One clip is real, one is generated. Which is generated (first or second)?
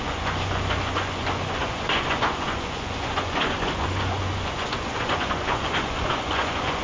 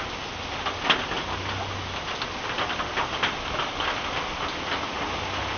first